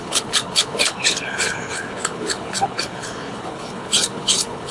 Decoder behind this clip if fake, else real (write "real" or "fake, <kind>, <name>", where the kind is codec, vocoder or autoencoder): fake, codec, HILCodec